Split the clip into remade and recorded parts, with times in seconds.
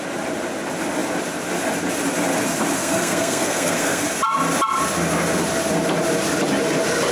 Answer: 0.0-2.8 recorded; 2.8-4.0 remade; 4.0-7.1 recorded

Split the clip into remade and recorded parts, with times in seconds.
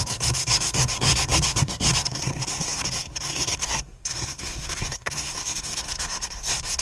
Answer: 0.0-6.8 remade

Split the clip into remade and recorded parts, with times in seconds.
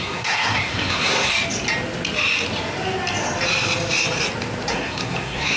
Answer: 0.0-1.3 remade; 1.3-4.7 recorded; 4.7-5.6 remade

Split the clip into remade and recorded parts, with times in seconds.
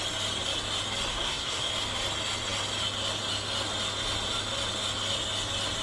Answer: 0.0-1.1 recorded; 1.1-1.7 remade; 1.7-5.8 recorded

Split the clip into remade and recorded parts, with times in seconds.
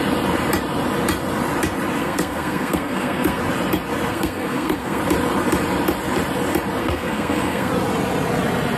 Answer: 0.0-2.0 recorded; 2.0-3.4 remade; 3.4-4.1 recorded; 4.1-5.0 remade; 5.0-6.8 recorded; 6.8-7.7 remade; 7.7-8.8 recorded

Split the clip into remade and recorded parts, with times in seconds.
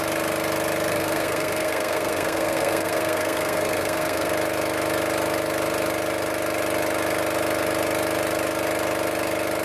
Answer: 0.0-0.9 recorded; 0.9-4.3 remade; 4.3-9.6 recorded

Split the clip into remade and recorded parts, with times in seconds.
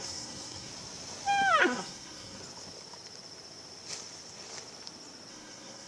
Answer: 0.0-0.7 remade; 0.7-1.6 recorded; 1.6-2.4 remade; 2.4-5.3 recorded; 5.3-5.9 remade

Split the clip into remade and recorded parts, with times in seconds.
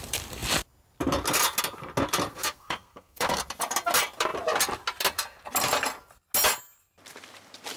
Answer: 0.0-2.3 recorded; 2.3-3.4 remade; 3.4-7.8 recorded